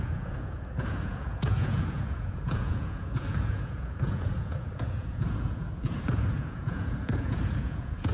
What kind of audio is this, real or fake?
fake